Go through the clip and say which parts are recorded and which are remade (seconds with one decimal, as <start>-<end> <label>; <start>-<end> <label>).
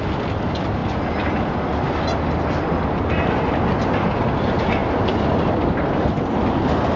0.0-7.0 recorded